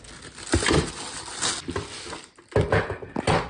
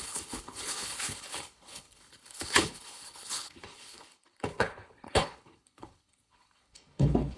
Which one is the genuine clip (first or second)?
first